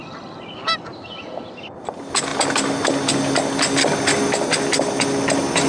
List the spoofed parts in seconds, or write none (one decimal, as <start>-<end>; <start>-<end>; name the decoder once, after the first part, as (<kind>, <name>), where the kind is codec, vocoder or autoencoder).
0.0-1.4 (vocoder, BigVGAN v2)